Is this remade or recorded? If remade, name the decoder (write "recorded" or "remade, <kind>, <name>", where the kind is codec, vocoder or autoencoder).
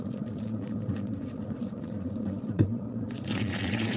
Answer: remade, vocoder, Vocos